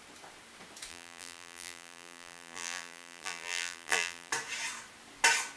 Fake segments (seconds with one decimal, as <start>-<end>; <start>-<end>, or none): 0.9-4.3